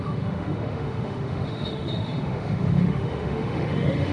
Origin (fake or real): fake